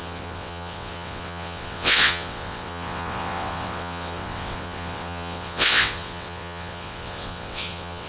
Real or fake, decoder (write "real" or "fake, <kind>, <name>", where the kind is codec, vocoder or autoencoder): fake, vocoder, WaveNeXt